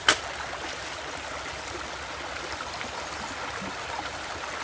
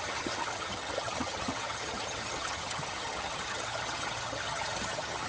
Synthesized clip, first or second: second